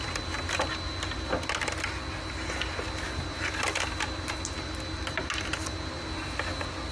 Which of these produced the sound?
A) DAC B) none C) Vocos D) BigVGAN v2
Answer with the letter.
B